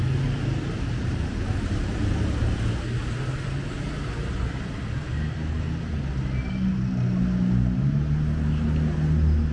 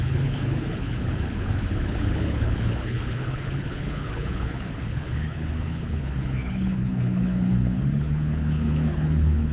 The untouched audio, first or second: first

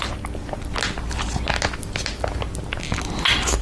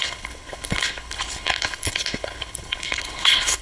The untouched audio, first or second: first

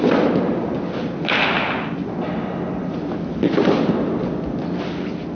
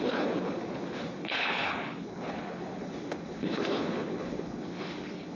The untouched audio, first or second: first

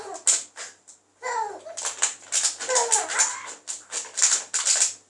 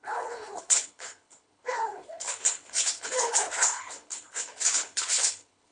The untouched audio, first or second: first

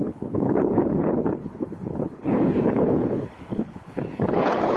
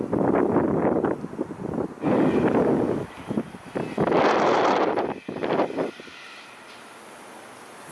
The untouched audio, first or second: second